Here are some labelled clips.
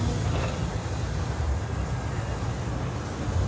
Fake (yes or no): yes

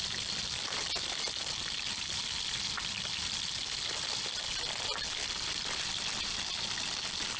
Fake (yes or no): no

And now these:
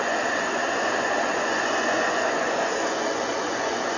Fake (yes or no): yes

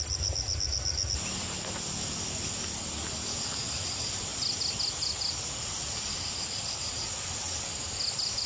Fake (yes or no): no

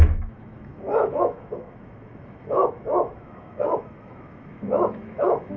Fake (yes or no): yes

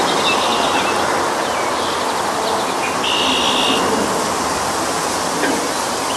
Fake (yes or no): no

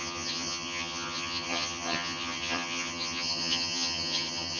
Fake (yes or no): yes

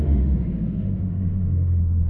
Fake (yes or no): yes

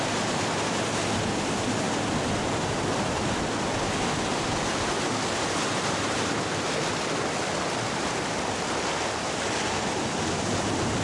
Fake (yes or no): no